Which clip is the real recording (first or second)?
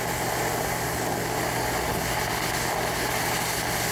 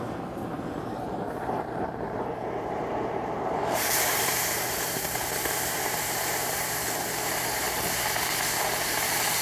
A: first